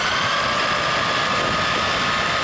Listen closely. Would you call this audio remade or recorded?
recorded